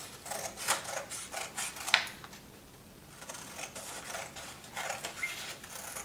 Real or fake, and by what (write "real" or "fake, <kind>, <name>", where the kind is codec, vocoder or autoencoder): real